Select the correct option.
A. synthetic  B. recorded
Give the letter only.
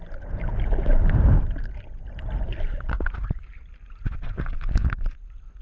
B